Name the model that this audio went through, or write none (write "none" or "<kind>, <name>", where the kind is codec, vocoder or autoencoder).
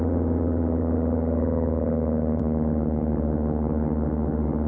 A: autoencoder, DAC-VAE